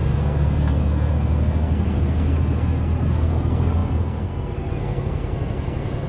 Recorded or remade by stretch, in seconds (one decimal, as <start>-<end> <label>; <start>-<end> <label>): 0.0-6.1 remade